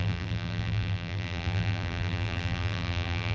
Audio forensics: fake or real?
fake